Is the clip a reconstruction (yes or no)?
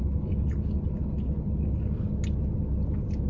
no